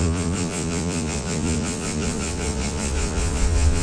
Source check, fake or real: fake